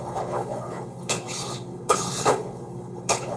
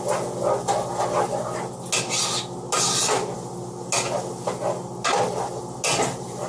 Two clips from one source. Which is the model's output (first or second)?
first